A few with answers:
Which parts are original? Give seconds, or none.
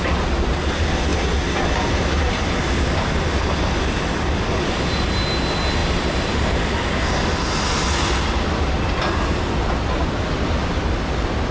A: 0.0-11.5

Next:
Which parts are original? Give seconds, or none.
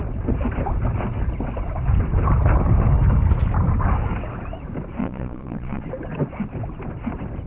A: 0.0-5.0; 5.8-7.5